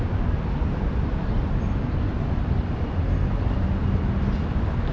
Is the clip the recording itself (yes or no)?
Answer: yes